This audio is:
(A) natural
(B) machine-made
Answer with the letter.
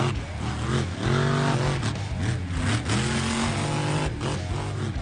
A